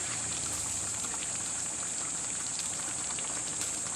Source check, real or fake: fake